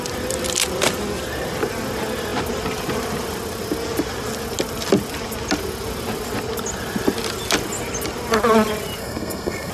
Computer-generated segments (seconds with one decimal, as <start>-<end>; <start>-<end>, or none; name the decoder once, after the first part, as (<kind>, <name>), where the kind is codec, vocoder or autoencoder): 9.0-9.7 (codec, SNAC)